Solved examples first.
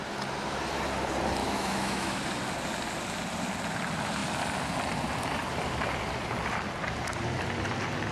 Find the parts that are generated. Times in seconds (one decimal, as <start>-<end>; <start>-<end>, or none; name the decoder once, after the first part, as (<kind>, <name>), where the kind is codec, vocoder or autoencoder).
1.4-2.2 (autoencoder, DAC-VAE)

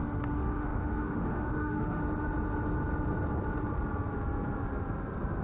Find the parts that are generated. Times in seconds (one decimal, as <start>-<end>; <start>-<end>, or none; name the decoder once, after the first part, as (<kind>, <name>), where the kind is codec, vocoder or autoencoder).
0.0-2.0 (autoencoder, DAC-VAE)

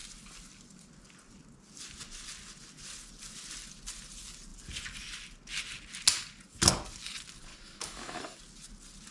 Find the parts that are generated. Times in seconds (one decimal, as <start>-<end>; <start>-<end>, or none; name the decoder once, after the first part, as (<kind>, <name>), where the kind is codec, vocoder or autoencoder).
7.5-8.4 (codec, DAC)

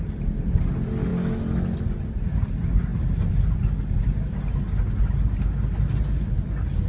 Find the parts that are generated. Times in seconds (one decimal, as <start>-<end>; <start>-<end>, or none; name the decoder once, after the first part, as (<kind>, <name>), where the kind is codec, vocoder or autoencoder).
none

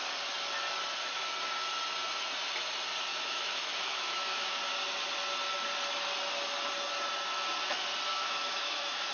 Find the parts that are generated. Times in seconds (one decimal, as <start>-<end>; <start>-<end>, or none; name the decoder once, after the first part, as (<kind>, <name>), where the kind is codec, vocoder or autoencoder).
3.1-4.6 (autoencoder, DAC-VAE); 8.1-9.1

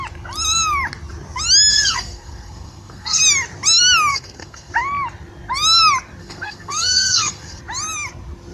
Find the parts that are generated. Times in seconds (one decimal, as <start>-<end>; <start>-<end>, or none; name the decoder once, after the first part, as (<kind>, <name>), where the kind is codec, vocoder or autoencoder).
1.7-3.2 (codec, SNAC); 4.1-4.7; 6.2-7.6